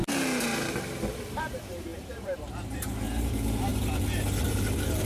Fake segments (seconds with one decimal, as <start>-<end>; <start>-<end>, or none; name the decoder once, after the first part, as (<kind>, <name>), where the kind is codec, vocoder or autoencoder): 1.3-3.7 (vocoder, BigVGAN v2); 4.4-5.0

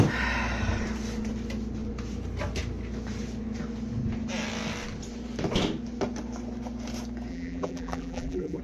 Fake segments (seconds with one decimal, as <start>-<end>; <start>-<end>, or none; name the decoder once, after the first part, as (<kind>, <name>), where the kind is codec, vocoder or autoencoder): 7.3-8.6 (vocoder, BigVGAN v2)

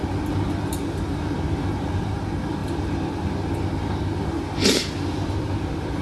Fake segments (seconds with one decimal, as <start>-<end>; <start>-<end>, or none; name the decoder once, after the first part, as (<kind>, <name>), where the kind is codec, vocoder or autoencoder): none

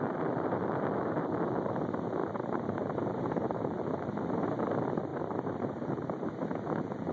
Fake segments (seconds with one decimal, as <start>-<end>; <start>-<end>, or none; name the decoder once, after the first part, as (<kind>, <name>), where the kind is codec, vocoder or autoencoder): 2.2-4.1 (vocoder, BigVGAN v2); 5.1-6.4

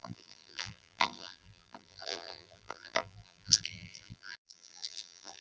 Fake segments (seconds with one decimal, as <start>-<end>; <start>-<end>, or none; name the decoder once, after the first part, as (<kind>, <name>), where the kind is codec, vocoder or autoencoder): 0.0-5.4 (vocoder, BigVGAN v2)

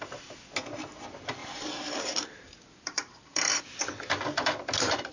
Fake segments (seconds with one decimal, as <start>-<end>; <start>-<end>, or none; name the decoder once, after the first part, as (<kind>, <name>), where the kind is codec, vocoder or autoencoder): 1.4-3.6 (vocoder, BigVGAN v2)